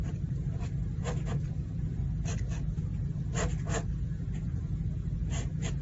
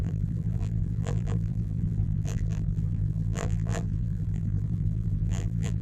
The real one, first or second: first